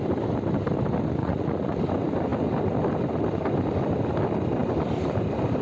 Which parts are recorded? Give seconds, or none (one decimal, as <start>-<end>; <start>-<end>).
0.0-1.2; 1.8-5.6